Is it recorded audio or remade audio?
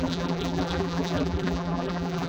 remade